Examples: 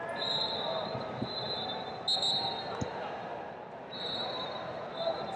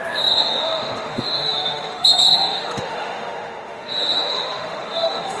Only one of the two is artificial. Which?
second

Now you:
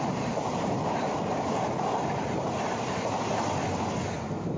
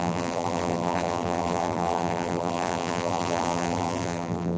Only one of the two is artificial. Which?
second